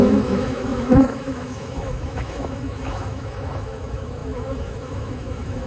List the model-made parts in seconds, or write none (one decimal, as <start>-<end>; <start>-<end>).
0.0-5.7